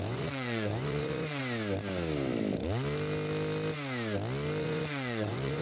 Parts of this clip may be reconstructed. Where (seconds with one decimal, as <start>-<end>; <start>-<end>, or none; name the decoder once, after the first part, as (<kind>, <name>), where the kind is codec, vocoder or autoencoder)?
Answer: 0.0-1.4 (vocoder, Vocos); 4.6-5.6